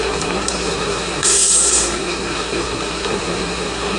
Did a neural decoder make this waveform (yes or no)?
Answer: yes